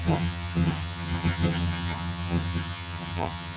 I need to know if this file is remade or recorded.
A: remade